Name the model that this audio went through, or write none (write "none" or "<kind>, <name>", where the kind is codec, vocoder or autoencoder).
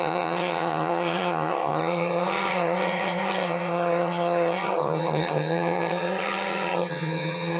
vocoder, HiFi-GAN